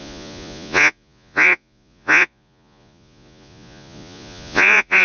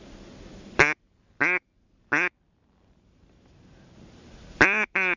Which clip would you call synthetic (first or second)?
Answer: first